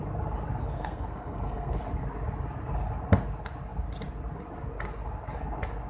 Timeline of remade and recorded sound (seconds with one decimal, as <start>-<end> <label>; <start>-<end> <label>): 0.0-0.6 recorded; 0.6-1.8 remade; 1.8-5.9 recorded